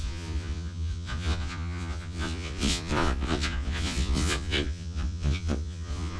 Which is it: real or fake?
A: fake